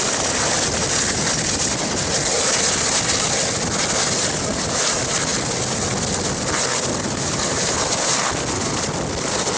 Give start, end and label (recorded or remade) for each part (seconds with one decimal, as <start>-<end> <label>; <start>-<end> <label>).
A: 0.0-9.6 recorded